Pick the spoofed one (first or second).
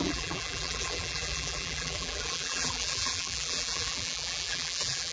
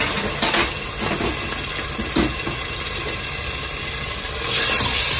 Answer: first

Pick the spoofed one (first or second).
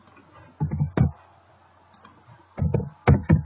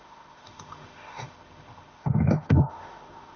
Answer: second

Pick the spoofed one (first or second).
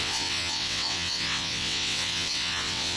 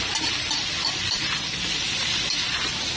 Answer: first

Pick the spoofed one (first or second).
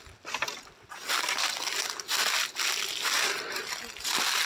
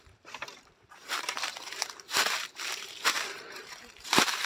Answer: second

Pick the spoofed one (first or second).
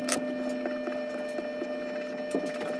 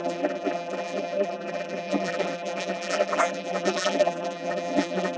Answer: second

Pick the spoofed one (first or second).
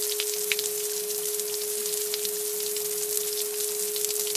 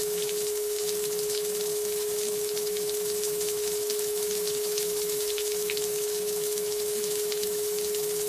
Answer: second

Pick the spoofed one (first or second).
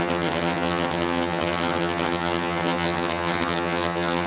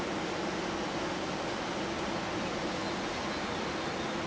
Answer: first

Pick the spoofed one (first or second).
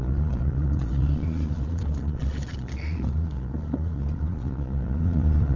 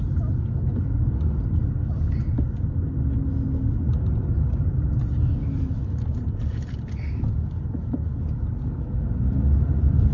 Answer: first